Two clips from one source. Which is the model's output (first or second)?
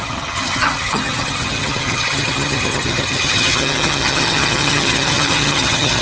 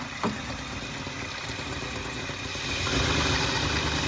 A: first